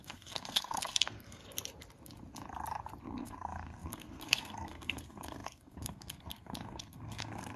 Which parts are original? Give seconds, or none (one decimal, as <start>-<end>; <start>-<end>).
1.4-3.0

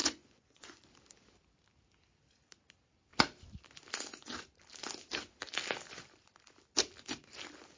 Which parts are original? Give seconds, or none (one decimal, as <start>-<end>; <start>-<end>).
0.8-7.8